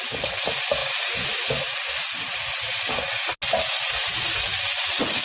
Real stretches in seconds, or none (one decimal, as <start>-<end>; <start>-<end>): 0.0-5.2